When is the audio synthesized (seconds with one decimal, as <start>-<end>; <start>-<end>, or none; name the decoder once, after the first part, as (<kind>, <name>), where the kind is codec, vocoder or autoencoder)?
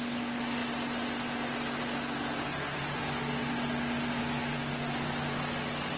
none